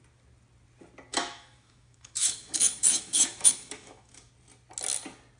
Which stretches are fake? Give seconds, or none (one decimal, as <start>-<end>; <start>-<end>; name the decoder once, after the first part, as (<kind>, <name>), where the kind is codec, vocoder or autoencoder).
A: 1.1-4.3 (autoencoder, DAC-VAE)